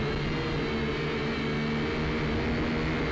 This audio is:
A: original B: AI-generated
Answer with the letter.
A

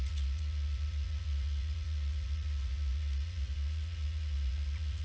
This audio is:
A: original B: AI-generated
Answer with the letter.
B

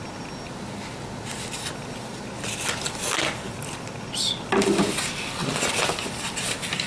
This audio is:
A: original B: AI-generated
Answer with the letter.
A